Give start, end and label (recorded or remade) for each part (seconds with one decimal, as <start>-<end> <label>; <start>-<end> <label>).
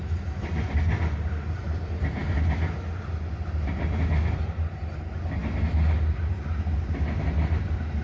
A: 0.0-8.0 recorded